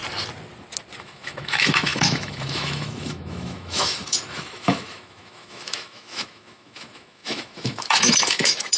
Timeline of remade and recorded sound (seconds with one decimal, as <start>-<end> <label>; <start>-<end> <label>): 0.0-1.0 recorded; 1.0-8.8 remade